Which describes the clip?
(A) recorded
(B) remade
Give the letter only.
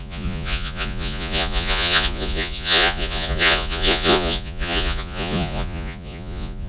B